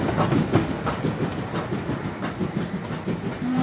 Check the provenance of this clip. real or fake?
real